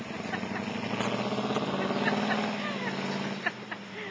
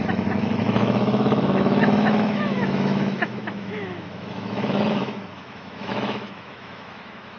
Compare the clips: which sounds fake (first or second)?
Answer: second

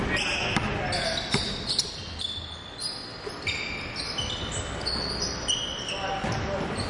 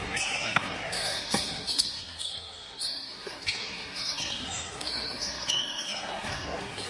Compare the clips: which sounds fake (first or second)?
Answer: second